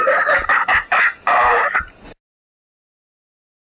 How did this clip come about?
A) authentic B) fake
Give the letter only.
A